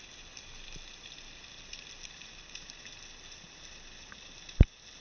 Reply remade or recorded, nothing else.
recorded